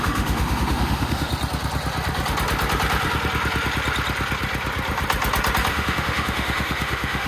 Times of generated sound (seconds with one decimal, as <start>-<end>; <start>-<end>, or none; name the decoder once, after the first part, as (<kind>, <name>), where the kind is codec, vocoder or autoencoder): 0.0-1.3 (autoencoder, DAC-VAE); 5.7-7.3